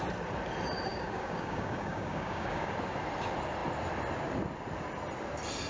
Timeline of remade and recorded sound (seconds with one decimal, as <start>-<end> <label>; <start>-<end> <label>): 0.0-0.9 recorded; 0.9-2.7 remade; 2.7-5.7 recorded